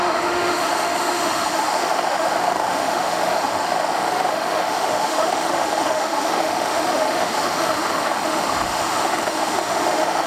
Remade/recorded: remade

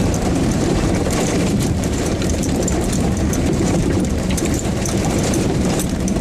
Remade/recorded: remade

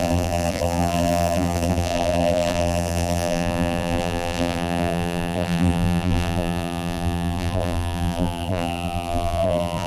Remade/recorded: remade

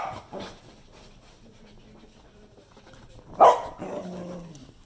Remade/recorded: recorded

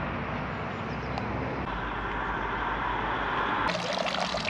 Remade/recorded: recorded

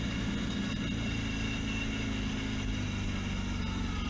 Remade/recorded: recorded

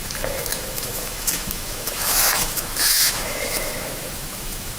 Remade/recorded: remade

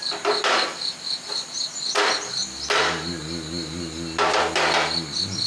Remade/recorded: recorded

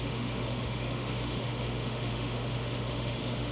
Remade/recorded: remade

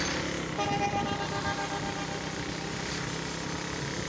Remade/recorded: recorded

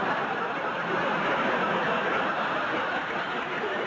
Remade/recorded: recorded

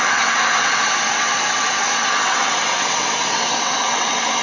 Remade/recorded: remade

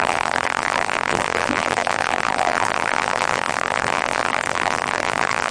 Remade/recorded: remade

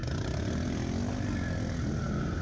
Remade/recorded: recorded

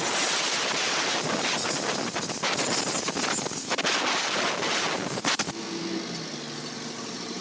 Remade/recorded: recorded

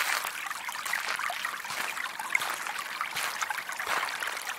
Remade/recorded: recorded